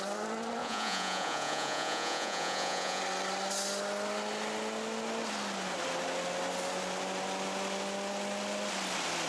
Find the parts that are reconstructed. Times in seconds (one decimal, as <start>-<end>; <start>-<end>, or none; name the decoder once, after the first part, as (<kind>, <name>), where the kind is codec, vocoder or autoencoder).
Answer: 0.6-3.0 (vocoder, Vocos)